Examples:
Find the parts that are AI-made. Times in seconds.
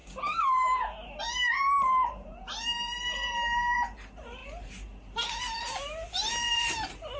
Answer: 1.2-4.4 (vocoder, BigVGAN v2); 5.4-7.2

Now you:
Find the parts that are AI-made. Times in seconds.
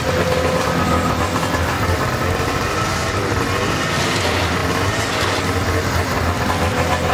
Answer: none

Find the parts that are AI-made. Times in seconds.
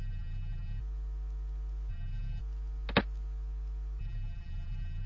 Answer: 0.0-0.8 (vocoder, BigVGAN v2); 1.9-2.4; 4.0-5.1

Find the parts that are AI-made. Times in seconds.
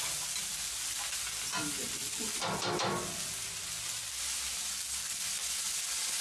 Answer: none